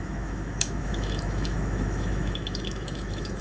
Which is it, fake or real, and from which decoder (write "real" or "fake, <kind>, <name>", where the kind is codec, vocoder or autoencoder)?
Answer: fake, autoencoder, DAC-VAE